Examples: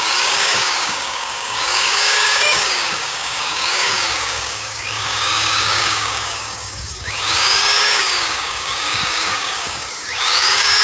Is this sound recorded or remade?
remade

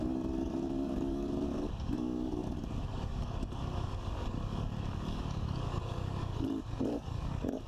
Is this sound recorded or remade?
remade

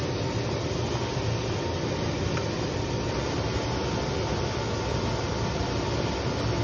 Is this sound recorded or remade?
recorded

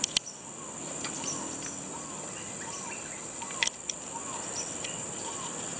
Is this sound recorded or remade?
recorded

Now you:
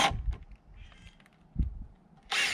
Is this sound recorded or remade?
recorded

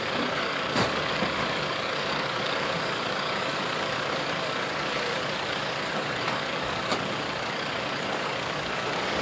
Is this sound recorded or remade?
remade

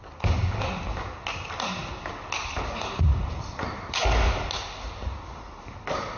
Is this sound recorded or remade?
recorded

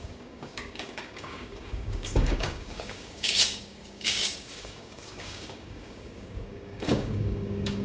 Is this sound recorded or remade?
remade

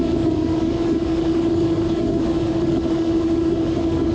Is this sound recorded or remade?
remade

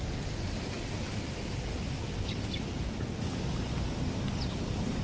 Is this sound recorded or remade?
recorded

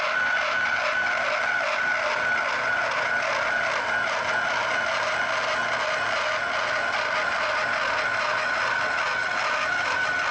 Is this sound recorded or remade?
recorded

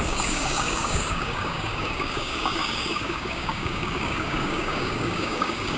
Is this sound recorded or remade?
remade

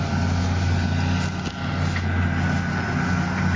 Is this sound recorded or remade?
recorded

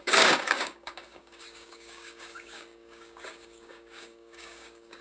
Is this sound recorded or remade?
remade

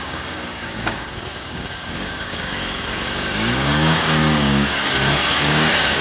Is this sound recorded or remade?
remade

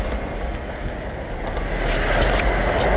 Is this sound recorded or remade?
recorded